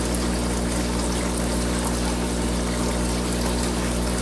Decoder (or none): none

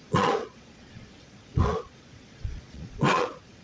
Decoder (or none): vocoder, Vocos